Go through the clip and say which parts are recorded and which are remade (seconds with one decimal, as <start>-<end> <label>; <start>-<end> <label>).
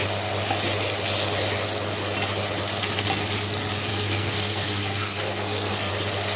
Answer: 0.0-3.9 recorded; 3.9-5.9 remade; 5.9-6.4 recorded